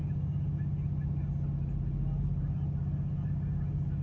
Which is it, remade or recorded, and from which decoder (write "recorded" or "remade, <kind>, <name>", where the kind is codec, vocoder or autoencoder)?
recorded